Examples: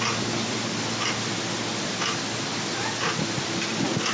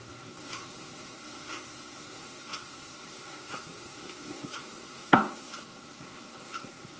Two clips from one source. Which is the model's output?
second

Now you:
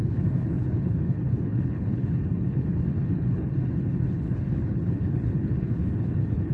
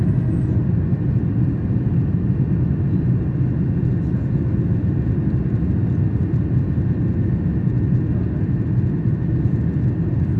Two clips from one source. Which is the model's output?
first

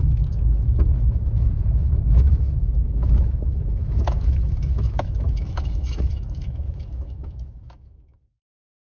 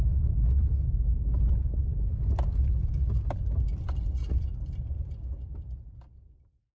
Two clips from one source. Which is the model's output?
first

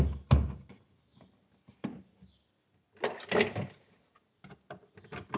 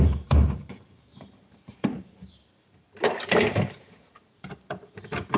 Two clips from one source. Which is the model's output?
second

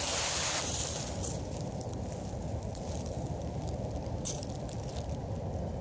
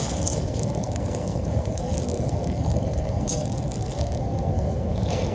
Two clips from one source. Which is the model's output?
second